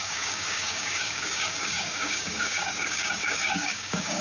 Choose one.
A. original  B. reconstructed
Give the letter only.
B